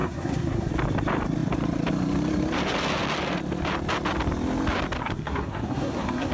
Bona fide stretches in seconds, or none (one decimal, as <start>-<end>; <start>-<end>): 0.7-5.0